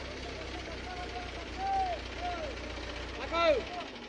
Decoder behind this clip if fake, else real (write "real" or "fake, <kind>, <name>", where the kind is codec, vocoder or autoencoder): real